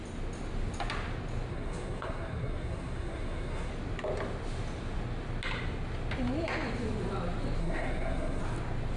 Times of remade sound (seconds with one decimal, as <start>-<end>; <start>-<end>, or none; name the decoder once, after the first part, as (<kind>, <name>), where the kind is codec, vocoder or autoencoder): 1.5-3.7 (codec, SNAC); 7.6-8.4